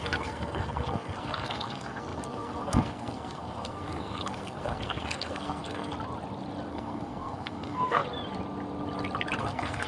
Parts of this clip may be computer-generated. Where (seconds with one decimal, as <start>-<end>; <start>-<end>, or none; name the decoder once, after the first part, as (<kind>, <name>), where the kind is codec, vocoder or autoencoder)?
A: 0.0-5.9 (codec, SNAC); 6.7-8.0; 9.4-9.9